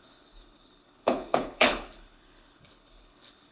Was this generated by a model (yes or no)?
yes